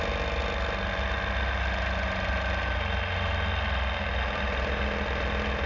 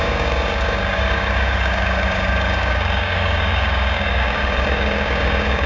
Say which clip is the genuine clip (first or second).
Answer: first